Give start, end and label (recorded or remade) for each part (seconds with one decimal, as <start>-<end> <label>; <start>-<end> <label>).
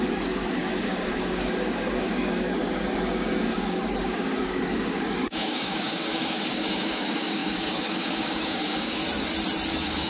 0.0-9.0 remade; 9.0-9.7 recorded; 9.7-10.1 remade